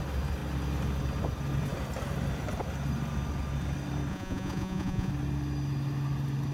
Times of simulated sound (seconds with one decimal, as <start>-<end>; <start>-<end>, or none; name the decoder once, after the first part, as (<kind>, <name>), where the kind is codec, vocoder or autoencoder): 4.1-5.1 (vocoder, Vocos)